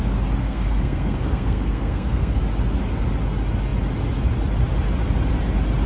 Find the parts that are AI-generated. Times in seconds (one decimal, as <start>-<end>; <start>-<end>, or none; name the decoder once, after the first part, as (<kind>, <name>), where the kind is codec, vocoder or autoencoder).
0.4-2.4 (codec, SNAC)